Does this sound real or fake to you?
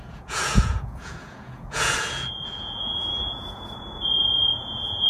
fake